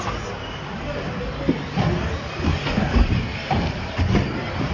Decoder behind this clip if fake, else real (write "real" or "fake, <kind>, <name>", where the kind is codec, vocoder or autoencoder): real